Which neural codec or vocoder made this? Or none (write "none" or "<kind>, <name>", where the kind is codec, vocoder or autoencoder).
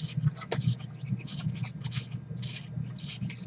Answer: none